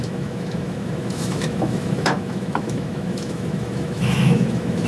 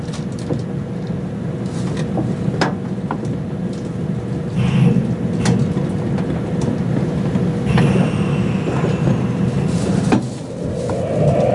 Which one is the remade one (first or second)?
first